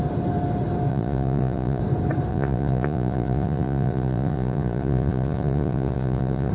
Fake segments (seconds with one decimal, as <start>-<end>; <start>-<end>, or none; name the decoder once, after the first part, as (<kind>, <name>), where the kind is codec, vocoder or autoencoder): 0.9-1.8 (vocoder, Vocos); 2.3-6.5